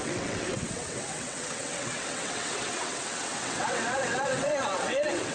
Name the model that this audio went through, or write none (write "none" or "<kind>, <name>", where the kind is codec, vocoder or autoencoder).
vocoder, WaveNeXt